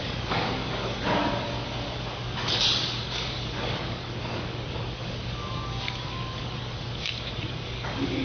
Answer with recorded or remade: remade